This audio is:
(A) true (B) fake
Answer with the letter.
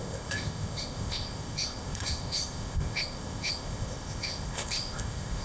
B